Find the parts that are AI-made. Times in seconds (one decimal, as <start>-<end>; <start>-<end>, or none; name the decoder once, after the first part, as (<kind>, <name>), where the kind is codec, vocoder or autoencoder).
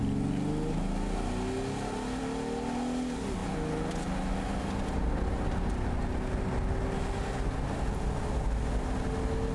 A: none